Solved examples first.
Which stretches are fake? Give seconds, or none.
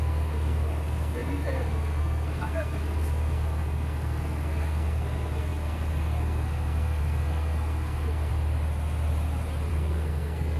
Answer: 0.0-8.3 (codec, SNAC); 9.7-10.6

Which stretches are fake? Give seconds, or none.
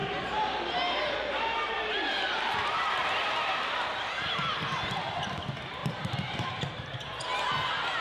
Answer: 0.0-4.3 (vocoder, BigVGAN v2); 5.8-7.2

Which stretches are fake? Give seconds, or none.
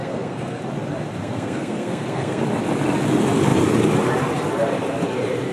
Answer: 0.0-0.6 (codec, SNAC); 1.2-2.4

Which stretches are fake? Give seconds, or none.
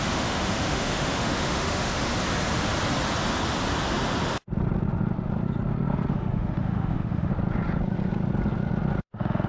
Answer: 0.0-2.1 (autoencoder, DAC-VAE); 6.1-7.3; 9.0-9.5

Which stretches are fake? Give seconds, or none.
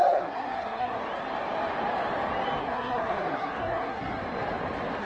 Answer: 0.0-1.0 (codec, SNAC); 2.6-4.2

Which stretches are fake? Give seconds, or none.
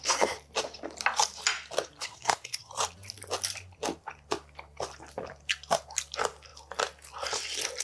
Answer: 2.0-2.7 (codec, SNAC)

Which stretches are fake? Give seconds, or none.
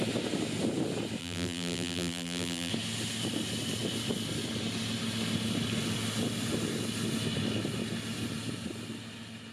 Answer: 1.2-2.7 (vocoder, BigVGAN v2)